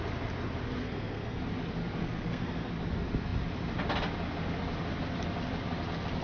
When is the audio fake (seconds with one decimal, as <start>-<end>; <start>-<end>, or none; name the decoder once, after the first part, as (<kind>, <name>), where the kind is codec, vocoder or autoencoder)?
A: 0.8-1.4 (codec, SNAC); 2.0-2.7